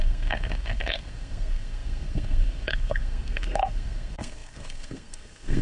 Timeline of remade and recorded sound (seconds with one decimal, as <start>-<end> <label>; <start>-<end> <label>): 0.0-5.6 remade